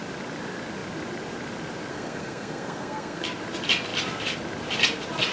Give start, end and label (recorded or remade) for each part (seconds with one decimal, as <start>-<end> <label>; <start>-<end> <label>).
0.0-1.9 recorded; 1.9-3.2 remade; 3.2-5.3 recorded